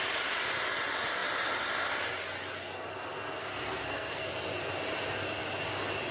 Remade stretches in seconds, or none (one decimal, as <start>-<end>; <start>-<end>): 3.4-4.3